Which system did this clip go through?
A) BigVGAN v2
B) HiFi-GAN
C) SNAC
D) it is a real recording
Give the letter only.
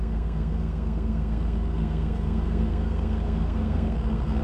C